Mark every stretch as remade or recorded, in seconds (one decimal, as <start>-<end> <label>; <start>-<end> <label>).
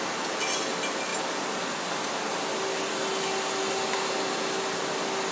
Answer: 0.0-5.3 recorded